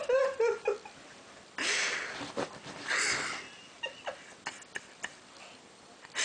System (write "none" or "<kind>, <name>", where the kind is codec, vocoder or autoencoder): none